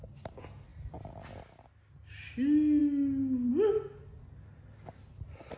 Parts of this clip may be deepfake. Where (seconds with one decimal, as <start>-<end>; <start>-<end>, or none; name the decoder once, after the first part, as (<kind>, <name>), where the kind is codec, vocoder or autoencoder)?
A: 2.8-3.5 (codec, DAC)